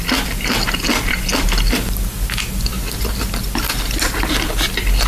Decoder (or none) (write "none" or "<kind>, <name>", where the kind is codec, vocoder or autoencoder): none